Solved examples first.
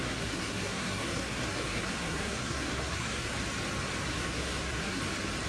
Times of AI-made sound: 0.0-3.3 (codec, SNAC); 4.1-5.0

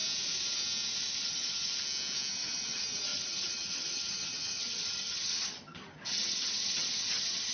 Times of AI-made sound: 1.2-1.7 (vocoder, HiFi-GAN); 2.3-7.5

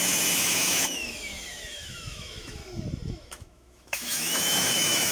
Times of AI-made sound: 0.0-2.6 (autoencoder, DAC-VAE); 3.1-5.1

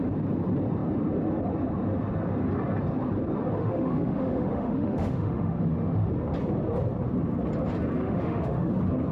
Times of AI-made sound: 3.6-6.1 (autoencoder, DAC-VAE); 8.0-8.7